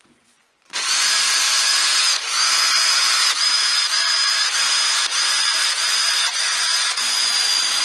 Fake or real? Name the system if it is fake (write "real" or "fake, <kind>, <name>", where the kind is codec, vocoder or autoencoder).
fake, vocoder, Vocos